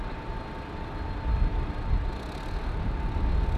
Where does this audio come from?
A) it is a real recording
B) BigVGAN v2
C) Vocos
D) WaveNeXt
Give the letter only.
A